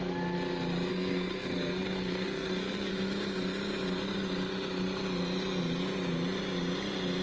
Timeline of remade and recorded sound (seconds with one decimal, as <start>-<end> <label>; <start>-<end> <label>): 0.0-0.9 recorded; 0.9-2.9 remade; 2.9-7.2 recorded